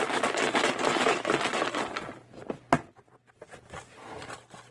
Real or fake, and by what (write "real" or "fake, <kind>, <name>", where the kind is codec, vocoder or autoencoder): real